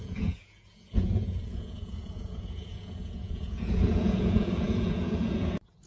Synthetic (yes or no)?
yes